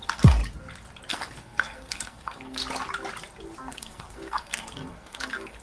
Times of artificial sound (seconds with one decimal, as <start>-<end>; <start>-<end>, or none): 0.0-0.4; 1.1-2.6; 3.7-5.6